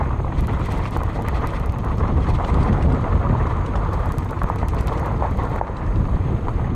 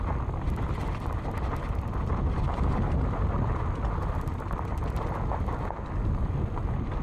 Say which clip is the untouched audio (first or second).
second